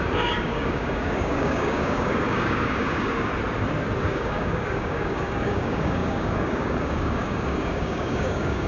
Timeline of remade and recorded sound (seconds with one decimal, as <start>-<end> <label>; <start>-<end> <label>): 0.0-3.3 remade; 3.3-4.0 recorded; 4.0-8.7 remade